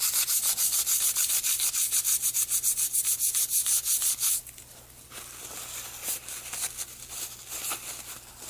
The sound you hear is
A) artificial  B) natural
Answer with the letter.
B